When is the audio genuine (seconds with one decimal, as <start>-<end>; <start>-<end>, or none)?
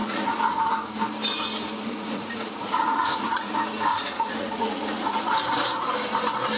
0.6-1.8; 3.5-3.9; 5.4-6.6